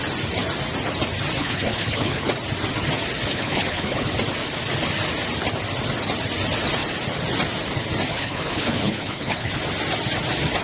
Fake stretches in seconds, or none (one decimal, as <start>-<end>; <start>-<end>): 1.4-2.3; 3.3-4.1; 8.1-9.5